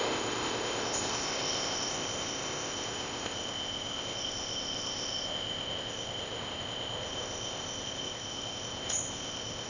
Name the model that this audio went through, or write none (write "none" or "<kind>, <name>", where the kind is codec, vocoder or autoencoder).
codec, ZipCodec